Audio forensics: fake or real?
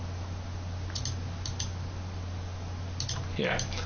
real